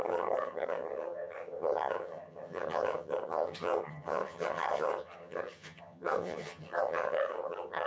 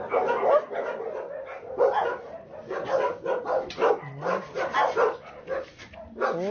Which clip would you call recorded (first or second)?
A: second